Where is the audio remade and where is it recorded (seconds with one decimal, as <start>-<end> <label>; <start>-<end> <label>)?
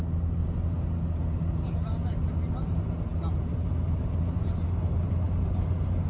0.0-6.1 recorded